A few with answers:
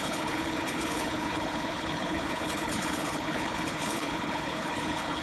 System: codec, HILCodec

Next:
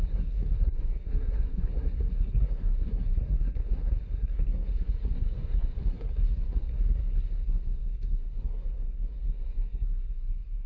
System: codec, SNAC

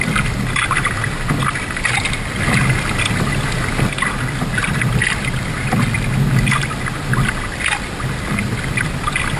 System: none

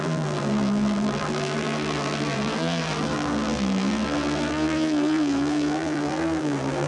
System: vocoder, BigVGAN v2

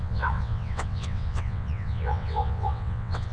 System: vocoder, WaveNeXt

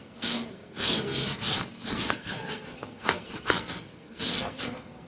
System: codec, SNAC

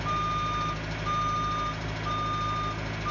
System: none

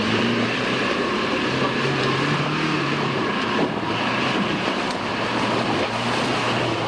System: vocoder, BigVGAN v2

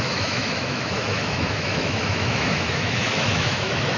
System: autoencoder, DAC-VAE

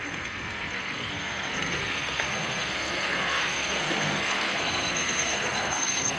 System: codec, SNAC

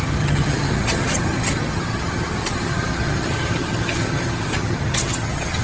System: vocoder, HiFi-GAN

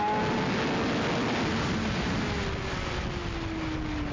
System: none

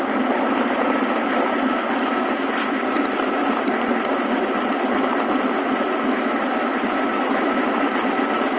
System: none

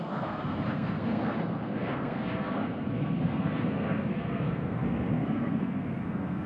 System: codec, SNAC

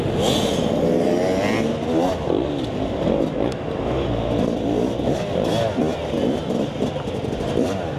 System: none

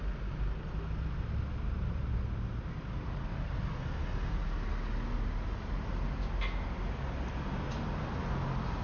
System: none